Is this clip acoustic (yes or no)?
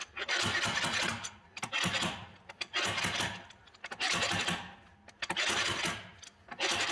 yes